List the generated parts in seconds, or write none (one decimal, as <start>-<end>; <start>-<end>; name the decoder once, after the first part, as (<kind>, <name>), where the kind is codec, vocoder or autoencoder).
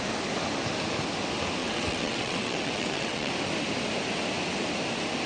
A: 1.6-3.3 (vocoder, WaveNeXt)